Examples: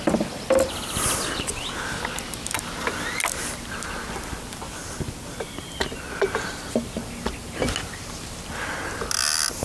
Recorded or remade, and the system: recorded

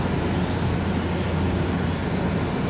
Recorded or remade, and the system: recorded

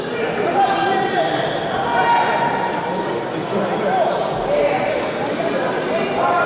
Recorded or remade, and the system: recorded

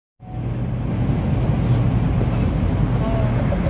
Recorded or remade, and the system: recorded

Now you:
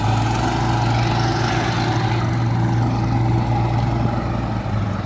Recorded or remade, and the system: recorded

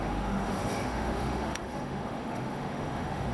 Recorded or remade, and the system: remade, autoencoder, DAC-VAE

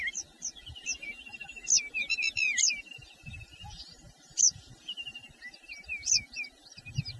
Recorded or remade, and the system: recorded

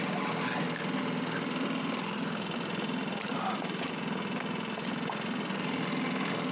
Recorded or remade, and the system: recorded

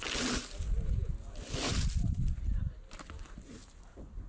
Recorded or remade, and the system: recorded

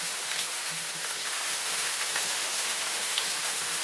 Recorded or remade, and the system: remade, autoencoder, DAC-VAE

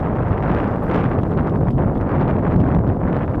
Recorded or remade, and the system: recorded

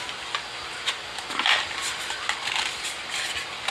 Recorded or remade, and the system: recorded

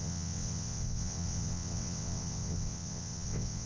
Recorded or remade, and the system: remade, vocoder, WaveNeXt